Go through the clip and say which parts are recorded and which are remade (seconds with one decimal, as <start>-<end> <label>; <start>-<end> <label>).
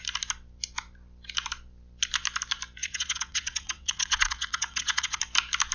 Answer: 0.0-2.8 recorded; 2.8-5.2 remade; 5.2-5.7 recorded